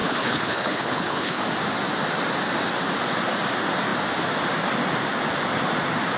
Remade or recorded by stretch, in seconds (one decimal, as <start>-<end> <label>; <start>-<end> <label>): 0.0-1.4 remade; 1.4-6.2 recorded

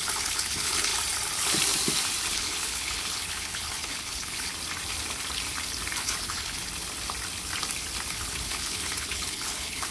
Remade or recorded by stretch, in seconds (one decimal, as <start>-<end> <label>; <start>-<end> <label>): 0.0-0.9 remade; 0.9-2.3 recorded; 2.3-4.5 remade; 4.5-6.0 recorded; 6.0-6.6 remade; 6.6-8.1 recorded; 8.1-9.9 remade

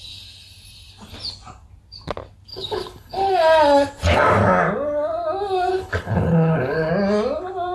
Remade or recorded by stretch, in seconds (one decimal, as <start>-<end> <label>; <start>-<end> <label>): 0.0-2.5 recorded; 2.5-3.3 remade; 3.3-5.7 recorded; 5.7-6.9 remade; 6.9-7.7 recorded